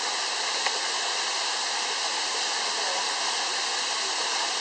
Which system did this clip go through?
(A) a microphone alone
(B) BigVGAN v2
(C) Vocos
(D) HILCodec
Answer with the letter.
A